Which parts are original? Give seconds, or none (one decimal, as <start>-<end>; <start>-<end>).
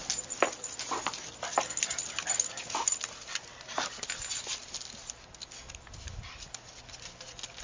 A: 0.0-7.6